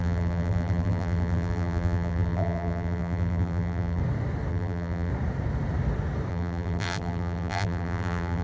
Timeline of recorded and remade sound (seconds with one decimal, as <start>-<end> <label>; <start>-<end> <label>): 0.0-4.0 remade; 4.0-4.5 recorded; 4.5-5.1 remade; 5.1-6.3 recorded; 6.3-8.4 remade